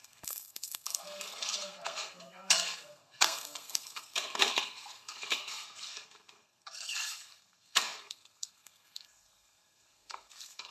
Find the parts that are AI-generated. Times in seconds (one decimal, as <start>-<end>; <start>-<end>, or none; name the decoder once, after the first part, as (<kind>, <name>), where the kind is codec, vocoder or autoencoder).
0.0-10.7 (codec, SNAC)